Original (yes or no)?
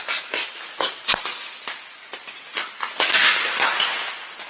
yes